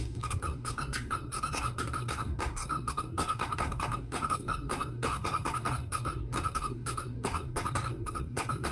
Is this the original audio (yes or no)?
no